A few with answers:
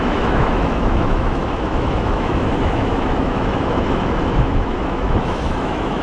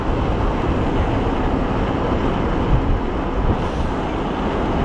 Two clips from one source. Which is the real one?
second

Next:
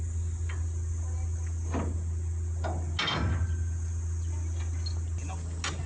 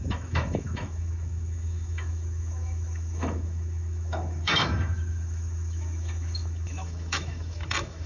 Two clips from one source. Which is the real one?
first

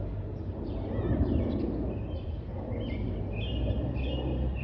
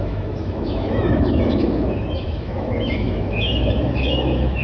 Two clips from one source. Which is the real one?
first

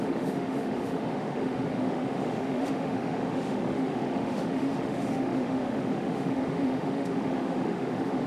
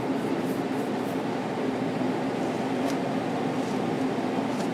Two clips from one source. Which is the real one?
second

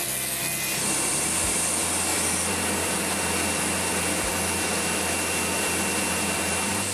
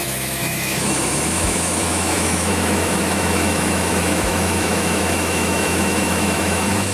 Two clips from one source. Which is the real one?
first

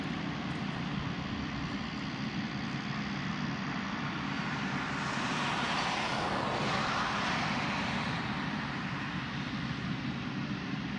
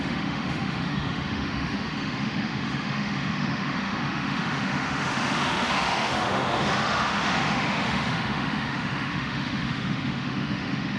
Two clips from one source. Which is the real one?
first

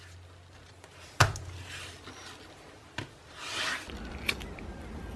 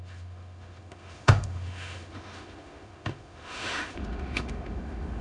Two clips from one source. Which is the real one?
first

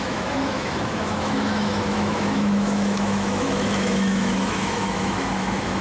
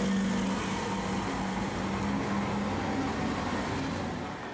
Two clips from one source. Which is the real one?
second